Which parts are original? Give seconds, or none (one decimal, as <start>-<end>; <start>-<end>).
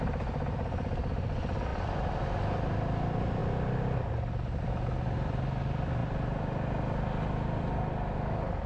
0.0-1.7; 2.5-8.7